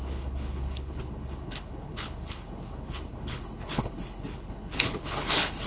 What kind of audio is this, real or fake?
fake